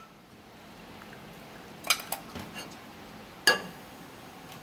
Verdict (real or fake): real